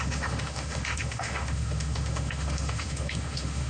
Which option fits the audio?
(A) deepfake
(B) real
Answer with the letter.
A